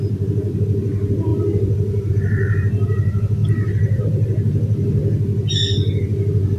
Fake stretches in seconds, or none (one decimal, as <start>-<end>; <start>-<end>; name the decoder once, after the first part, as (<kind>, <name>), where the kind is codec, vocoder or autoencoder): 0.0-1.3 (vocoder, BigVGAN v2); 2.1-5.0; 6.0-6.6